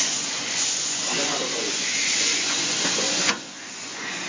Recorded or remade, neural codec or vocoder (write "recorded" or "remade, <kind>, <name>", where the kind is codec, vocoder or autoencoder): remade, vocoder, Vocos